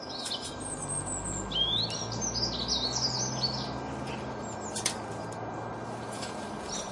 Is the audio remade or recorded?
recorded